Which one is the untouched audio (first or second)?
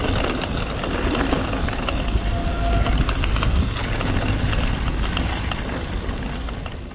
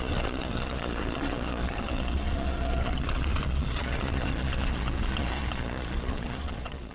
first